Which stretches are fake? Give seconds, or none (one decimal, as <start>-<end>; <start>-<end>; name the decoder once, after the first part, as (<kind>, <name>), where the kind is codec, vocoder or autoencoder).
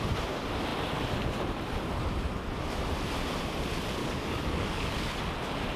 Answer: 4.0-5.2 (codec, DAC)